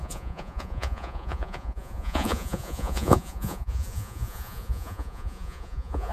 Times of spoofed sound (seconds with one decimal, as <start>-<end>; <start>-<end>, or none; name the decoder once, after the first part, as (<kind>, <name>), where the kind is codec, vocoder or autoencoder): 0.0-6.1 (vocoder, Vocos)